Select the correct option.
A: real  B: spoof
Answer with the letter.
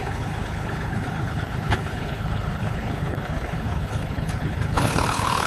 B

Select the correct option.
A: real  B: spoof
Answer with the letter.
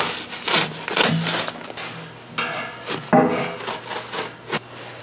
A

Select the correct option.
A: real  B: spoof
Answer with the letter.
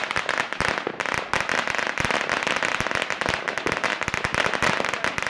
A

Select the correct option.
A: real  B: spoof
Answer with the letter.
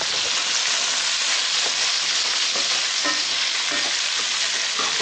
A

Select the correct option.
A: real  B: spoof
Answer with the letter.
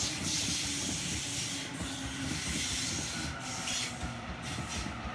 A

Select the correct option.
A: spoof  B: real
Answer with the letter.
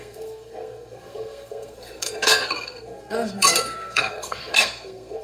A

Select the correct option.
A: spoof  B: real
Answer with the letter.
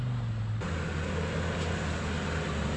B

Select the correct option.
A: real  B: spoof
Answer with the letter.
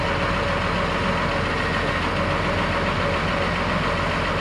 A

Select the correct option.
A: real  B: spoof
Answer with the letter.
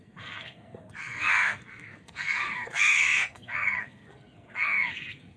B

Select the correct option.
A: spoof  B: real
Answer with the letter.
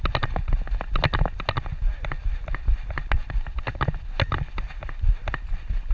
B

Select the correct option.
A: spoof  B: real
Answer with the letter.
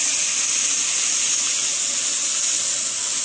B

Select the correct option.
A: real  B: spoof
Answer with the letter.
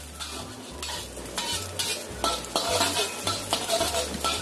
A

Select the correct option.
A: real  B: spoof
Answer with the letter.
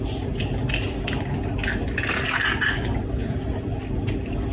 A